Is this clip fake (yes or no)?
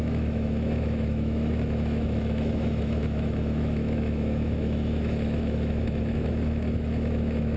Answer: yes